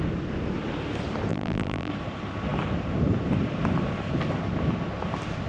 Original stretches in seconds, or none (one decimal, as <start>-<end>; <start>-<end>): 0.0-1.3; 1.9-5.5

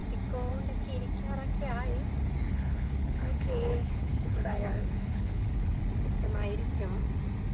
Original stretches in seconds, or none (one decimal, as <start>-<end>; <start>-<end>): 0.0-2.5; 5.8-7.5